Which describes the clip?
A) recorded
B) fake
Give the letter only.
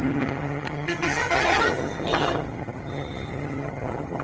B